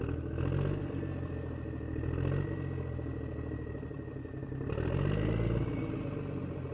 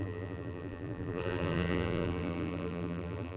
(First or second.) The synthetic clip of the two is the second